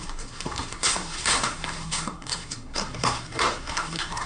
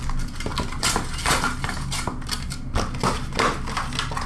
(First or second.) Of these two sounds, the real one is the second